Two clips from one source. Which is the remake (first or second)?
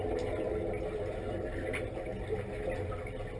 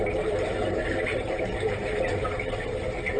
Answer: second